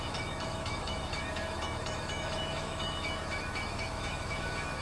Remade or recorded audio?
remade